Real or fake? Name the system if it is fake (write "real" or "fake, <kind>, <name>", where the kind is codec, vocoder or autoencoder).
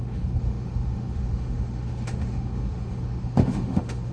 fake, autoencoder, DAC-VAE